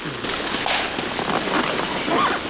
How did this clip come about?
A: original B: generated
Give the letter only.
A